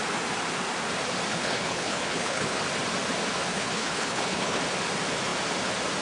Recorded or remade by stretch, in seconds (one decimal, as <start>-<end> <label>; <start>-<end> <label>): 0.0-1.3 recorded; 1.3-2.6 remade; 2.6-3.5 recorded; 3.5-4.6 remade; 4.6-6.0 recorded